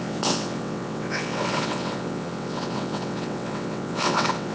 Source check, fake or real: fake